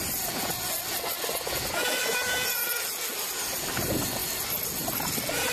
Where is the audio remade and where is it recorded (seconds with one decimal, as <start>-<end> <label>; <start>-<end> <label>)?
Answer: 0.0-5.5 recorded